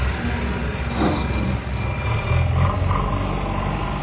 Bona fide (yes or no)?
yes